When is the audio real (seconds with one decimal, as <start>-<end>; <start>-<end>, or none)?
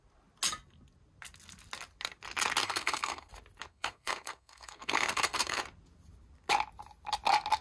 0.0-2.6; 3.3-3.7; 5.6-7.6